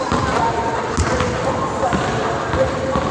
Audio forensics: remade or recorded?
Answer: recorded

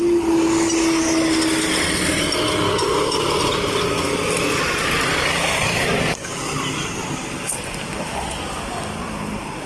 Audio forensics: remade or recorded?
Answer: recorded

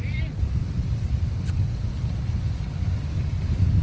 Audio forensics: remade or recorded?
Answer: remade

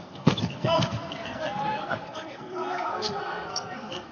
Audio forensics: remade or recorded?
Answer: remade